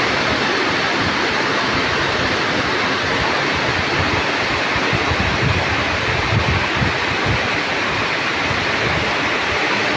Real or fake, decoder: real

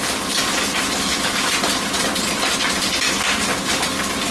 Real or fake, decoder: real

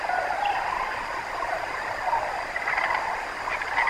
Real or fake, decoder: real